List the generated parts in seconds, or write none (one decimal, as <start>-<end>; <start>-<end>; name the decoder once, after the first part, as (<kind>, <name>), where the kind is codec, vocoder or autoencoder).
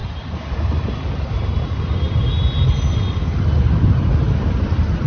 0.0-2.2 (vocoder, BigVGAN v2)